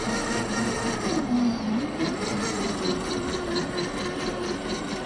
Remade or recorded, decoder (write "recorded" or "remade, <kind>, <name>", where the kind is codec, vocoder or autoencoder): recorded